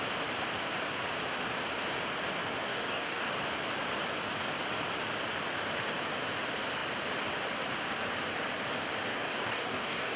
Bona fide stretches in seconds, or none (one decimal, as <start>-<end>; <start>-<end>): 0.0-2.6; 3.3-9.1